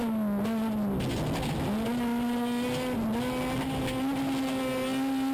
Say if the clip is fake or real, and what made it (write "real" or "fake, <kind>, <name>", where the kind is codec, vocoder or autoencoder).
real